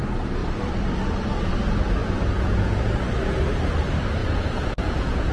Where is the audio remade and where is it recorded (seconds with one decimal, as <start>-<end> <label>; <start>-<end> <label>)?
0.0-2.0 recorded; 2.0-2.9 remade; 2.9-4.2 recorded; 4.2-5.3 remade